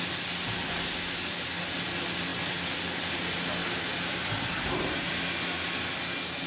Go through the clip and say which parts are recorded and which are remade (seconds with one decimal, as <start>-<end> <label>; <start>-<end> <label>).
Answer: 0.0-3.6 recorded; 3.6-5.1 remade; 5.1-6.5 recorded